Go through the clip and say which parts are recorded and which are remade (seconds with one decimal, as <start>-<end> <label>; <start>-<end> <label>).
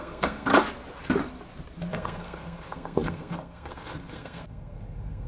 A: 0.0-0.5 remade; 0.5-1.9 recorded; 1.9-5.3 remade